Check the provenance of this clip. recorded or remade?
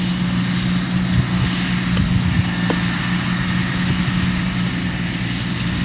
recorded